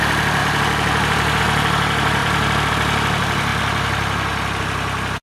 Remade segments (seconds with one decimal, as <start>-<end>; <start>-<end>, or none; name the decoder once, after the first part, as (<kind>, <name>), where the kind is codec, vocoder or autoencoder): 0.4-1.4 (vocoder, BigVGAN v2); 2.2-2.7